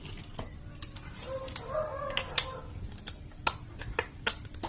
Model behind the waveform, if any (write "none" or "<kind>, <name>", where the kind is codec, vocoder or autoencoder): none